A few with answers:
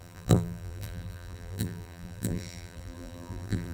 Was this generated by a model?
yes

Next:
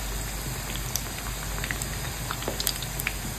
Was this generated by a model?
no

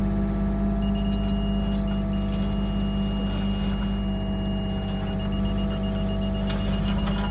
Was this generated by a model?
no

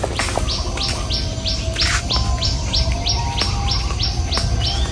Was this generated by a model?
no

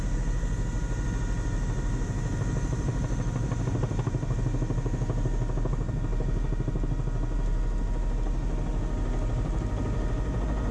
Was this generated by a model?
no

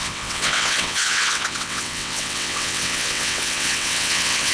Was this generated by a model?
yes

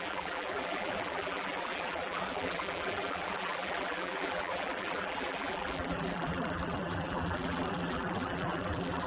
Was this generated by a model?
yes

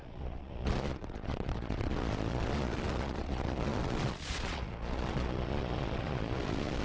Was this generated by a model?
yes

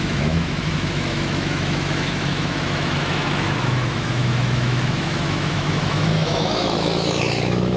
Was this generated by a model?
yes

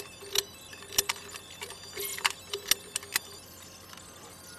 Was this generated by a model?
no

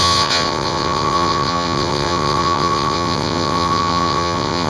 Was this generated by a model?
yes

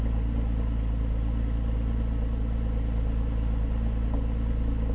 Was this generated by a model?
no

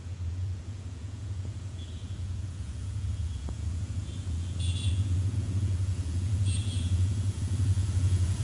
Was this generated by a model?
yes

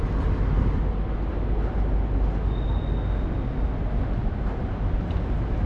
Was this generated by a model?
no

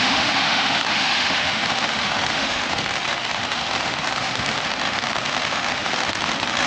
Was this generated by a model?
yes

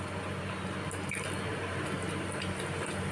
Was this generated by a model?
no